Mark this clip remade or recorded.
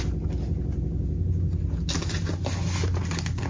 recorded